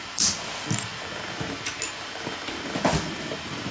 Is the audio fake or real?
real